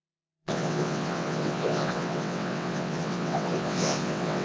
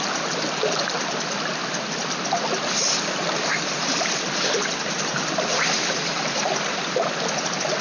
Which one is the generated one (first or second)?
first